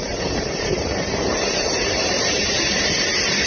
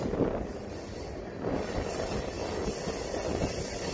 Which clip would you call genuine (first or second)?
second